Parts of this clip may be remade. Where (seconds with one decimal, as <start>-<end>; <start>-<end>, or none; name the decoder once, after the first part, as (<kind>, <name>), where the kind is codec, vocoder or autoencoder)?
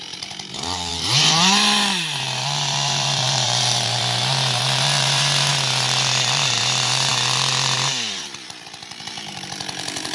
0.0-10.1 (vocoder, BigVGAN v2)